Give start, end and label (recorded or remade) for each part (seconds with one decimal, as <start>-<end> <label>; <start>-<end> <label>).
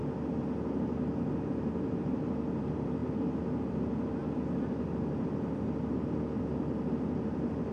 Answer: 0.0-7.7 recorded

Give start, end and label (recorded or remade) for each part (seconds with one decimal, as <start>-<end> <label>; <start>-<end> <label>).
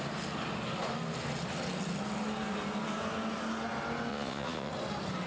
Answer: 0.0-4.1 recorded; 4.1-4.7 remade; 4.7-5.3 recorded